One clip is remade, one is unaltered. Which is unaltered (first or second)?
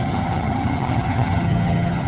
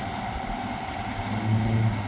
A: second